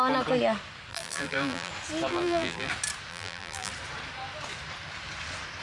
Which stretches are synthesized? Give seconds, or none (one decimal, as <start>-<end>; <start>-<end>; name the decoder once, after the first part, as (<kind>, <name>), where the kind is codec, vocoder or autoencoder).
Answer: 0.9-1.7 (vocoder, BigVGAN v2); 2.1-2.7; 3.1-3.7